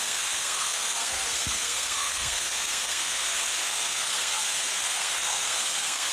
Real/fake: fake